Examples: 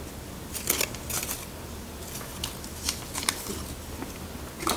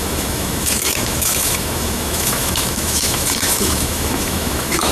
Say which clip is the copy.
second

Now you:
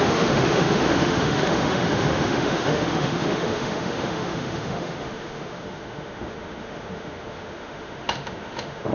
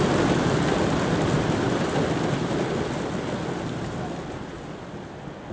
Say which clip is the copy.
first